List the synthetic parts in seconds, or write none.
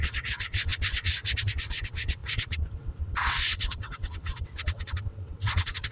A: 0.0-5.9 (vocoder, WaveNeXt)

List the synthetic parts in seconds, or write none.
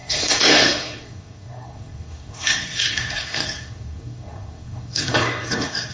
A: 0.0-5.9 (codec, SNAC)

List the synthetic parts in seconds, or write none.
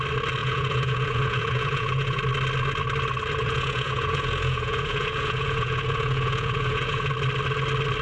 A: 0.4-2.2 (vocoder, Vocos); 3.4-7.1